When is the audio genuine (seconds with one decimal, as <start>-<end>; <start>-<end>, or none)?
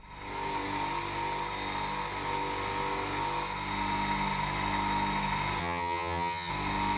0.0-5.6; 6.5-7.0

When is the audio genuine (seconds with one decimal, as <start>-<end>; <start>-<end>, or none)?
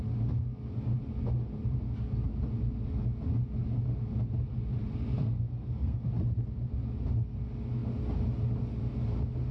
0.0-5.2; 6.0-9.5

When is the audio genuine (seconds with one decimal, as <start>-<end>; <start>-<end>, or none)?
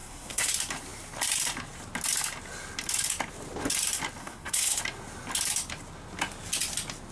0.5-4.2; 4.8-7.1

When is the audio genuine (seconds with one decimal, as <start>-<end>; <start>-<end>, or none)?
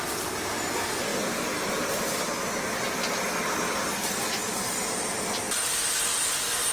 0.0-1.1; 2.7-6.7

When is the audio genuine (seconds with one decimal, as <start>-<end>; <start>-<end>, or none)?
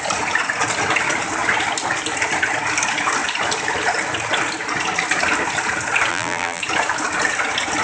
0.0-6.1; 6.6-7.8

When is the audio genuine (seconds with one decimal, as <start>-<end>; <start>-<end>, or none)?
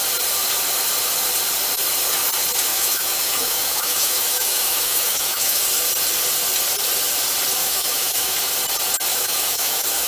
0.0-2.7; 5.6-7.6; 8.4-9.1